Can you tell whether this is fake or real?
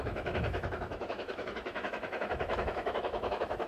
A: fake